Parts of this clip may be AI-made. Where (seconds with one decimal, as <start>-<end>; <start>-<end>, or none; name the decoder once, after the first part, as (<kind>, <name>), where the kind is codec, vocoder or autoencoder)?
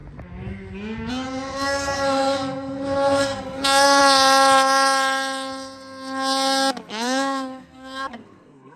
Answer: 1.1-4.0 (codec, SNAC); 6.9-8.8